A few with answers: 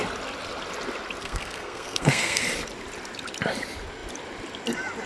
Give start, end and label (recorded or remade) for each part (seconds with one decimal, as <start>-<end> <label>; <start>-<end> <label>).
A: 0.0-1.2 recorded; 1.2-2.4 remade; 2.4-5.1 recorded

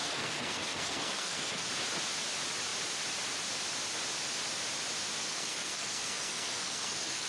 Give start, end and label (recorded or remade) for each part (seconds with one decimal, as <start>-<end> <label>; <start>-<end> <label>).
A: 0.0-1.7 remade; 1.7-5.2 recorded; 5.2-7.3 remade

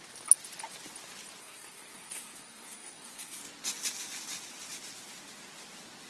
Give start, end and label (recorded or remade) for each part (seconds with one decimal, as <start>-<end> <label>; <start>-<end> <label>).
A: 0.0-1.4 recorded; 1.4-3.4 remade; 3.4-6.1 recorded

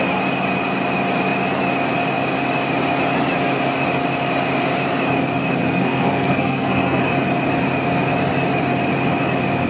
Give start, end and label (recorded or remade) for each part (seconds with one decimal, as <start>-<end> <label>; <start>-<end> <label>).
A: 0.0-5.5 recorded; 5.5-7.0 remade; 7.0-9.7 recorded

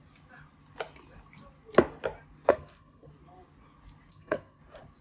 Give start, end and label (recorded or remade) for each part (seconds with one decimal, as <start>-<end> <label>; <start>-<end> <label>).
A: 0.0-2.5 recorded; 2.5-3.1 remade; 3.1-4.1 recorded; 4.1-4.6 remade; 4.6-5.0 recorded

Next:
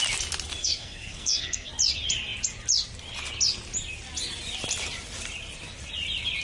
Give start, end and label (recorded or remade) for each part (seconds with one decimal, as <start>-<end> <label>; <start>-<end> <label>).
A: 0.0-0.6 recorded; 0.6-1.7 remade; 1.7-6.4 recorded

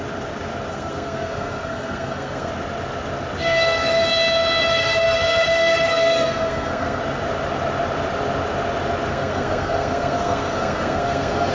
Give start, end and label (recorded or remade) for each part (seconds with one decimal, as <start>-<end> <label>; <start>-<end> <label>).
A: 0.0-0.7 recorded; 0.7-2.5 remade; 2.5-3.4 recorded; 3.4-4.0 remade; 4.0-4.7 recorded; 4.7-7.0 remade; 7.0-9.1 recorded; 9.1-11.5 remade